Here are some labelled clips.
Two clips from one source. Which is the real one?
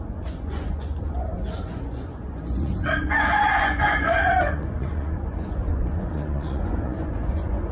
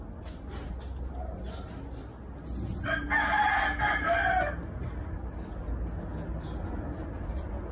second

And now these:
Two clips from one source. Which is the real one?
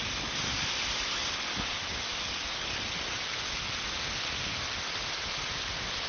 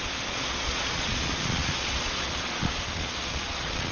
first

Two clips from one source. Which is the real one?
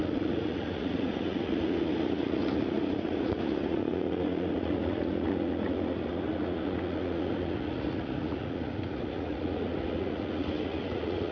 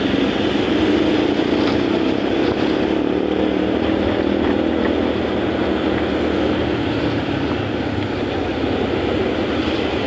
second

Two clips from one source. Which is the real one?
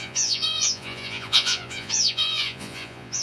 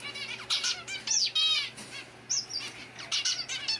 second